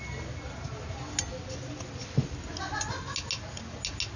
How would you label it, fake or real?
real